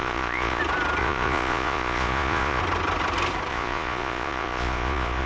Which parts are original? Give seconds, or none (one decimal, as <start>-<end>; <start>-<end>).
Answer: 0.6-1.0; 2.6-3.5